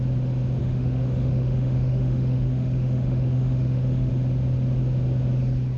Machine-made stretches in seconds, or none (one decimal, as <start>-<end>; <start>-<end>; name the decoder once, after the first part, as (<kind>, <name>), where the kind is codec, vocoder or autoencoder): 0.6-4.1 (autoencoder, DAC-VAE)